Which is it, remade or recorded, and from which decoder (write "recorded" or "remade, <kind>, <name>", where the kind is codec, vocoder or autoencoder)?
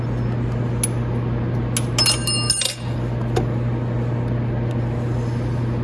recorded